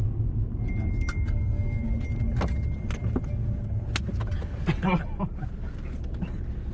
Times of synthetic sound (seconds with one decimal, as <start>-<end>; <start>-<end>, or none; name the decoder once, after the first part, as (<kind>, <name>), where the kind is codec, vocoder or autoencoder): 1.1-1.9 (codec, SNAC)